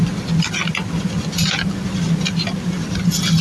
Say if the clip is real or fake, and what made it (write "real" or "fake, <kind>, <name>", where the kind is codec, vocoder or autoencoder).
real